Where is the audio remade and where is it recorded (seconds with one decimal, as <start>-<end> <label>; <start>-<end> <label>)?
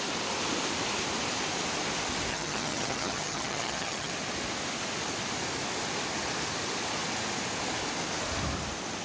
0.0-2.3 recorded; 2.3-4.1 remade; 4.1-9.0 recorded